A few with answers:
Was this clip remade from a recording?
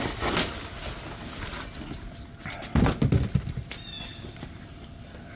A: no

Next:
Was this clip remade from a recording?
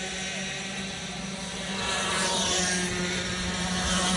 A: no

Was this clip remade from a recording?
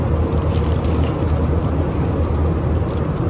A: no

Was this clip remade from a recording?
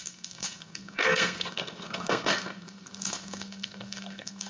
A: yes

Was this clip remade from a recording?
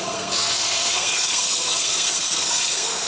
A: yes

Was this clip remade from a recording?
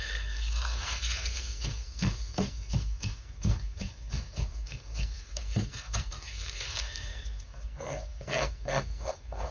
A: yes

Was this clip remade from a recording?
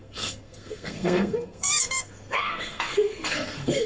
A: yes